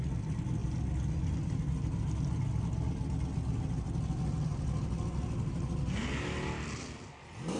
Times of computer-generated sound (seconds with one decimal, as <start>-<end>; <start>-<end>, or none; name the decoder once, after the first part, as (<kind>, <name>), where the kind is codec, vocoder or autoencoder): none